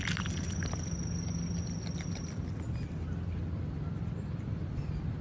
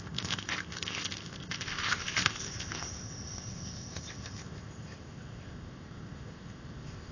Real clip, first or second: first